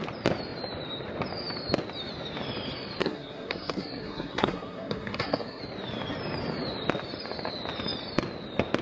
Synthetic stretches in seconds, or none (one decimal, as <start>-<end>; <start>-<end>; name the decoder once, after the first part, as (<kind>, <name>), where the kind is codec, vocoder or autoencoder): 3.0-5.6 (codec, SNAC)